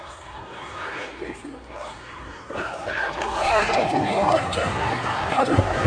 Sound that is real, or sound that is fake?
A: fake